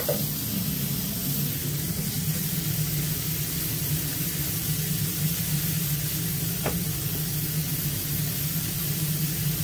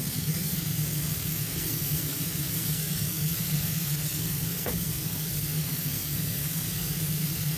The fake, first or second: second